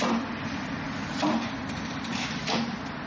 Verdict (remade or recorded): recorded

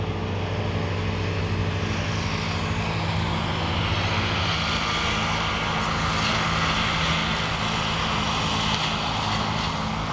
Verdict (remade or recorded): recorded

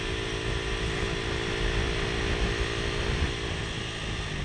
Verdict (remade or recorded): recorded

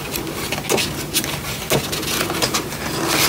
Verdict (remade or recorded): recorded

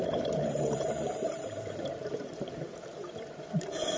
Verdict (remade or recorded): remade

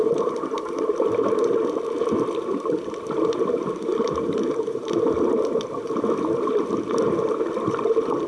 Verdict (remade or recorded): remade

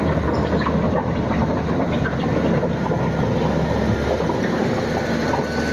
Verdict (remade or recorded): recorded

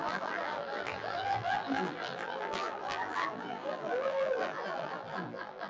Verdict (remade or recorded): remade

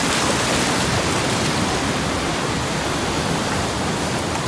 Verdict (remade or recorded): recorded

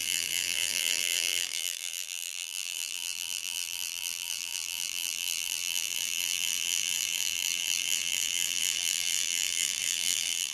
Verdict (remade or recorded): remade